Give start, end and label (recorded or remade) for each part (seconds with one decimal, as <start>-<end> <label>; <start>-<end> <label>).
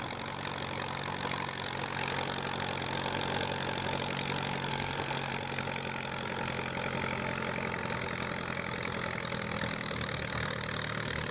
0.0-4.7 recorded; 4.7-5.3 remade; 5.3-11.3 recorded